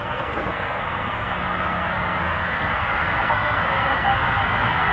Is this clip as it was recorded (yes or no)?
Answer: no